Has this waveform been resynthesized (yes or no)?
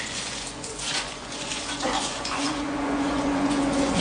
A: yes